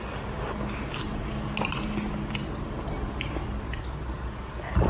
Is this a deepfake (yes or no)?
no